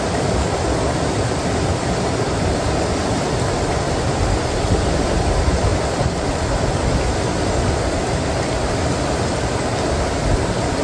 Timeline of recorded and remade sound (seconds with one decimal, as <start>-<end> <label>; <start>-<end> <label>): 0.0-1.7 recorded; 1.7-2.4 remade; 2.4-10.8 recorded